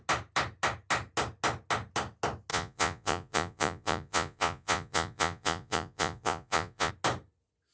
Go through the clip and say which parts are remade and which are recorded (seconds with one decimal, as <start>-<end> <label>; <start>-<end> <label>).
0.0-2.5 recorded; 2.5-6.9 remade; 6.9-7.7 recorded